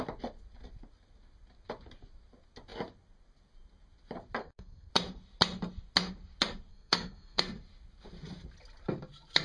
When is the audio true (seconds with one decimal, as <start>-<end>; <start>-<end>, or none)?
0.0-4.4; 4.9-6.7; 7.4-9.4